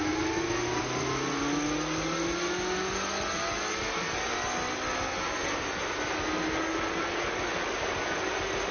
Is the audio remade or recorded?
recorded